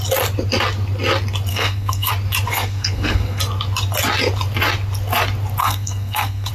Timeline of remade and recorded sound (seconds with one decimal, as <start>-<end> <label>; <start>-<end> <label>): 0.0-1.5 recorded; 1.5-2.1 remade; 2.1-2.5 recorded; 2.5-3.4 remade; 3.4-5.6 recorded; 5.6-6.5 remade

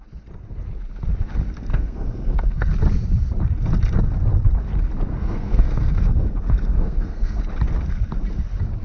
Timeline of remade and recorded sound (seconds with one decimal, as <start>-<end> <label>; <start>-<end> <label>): 0.0-1.7 recorded; 1.7-2.7 remade; 2.7-5.1 recorded; 5.1-7.4 remade; 7.4-8.8 recorded

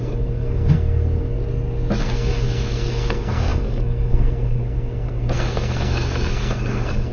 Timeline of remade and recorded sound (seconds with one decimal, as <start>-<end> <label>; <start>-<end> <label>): 0.0-1.4 remade; 1.4-2.0 recorded; 2.0-7.1 remade

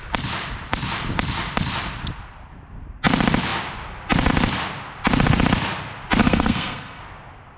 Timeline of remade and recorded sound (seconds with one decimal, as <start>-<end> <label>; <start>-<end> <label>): 0.0-6.2 recorded; 6.2-7.0 remade; 7.0-7.6 recorded

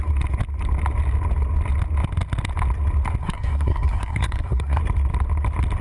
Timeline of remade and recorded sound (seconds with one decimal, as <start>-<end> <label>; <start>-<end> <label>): 0.0-3.2 recorded; 3.2-4.8 remade; 4.8-5.8 recorded

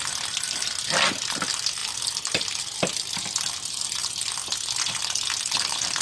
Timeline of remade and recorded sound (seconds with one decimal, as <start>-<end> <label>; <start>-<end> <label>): 0.0-6.0 recorded